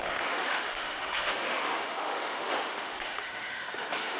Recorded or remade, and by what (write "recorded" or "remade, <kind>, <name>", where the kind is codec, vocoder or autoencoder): remade, autoencoder, DAC-VAE